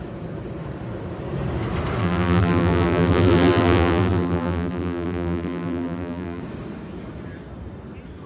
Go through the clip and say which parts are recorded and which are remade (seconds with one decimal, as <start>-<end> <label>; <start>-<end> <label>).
0.0-2.0 recorded; 2.0-6.4 remade; 6.4-8.3 recorded